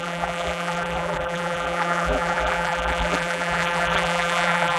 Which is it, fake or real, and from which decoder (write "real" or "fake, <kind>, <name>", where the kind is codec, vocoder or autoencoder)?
fake, vocoder, BigVGAN v2